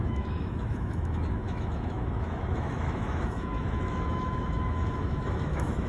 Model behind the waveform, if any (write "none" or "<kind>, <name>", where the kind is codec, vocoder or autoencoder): autoencoder, DAC-VAE